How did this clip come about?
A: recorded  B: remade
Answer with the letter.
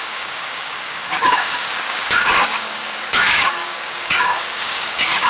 B